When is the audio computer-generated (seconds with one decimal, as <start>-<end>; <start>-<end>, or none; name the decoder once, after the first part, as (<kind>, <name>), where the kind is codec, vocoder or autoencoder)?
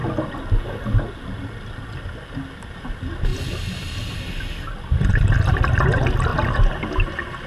none